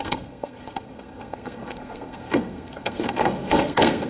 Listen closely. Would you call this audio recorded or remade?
remade